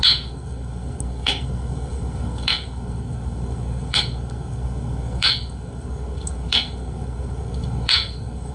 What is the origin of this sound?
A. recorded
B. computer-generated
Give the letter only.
B